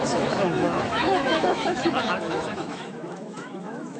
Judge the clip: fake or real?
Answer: fake